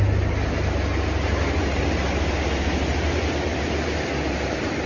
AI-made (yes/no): no